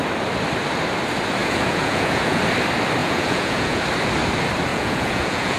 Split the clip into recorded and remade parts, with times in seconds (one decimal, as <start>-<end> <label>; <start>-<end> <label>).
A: 0.0-1.4 recorded; 1.4-2.4 remade; 2.4-3.0 recorded; 3.0-3.8 remade; 3.8-4.7 recorded; 4.7-5.6 remade